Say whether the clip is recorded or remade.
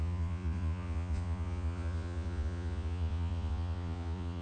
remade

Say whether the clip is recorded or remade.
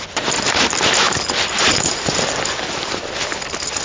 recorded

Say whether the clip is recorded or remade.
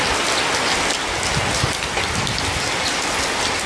recorded